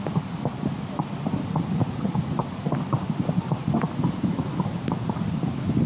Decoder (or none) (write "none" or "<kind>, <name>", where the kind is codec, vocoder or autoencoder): none